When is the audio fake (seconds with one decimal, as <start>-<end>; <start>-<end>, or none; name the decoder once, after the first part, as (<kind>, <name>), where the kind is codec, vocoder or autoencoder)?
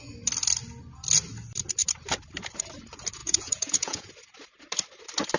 3.2-4.1 (vocoder, Vocos)